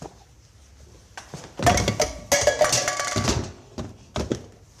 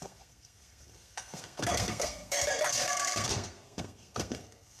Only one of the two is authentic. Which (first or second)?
first